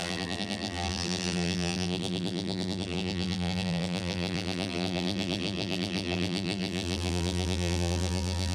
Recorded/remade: remade